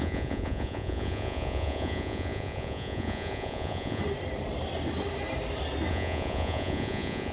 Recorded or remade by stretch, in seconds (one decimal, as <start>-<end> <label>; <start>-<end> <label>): 0.0-4.0 remade; 4.0-5.9 recorded; 5.9-7.3 remade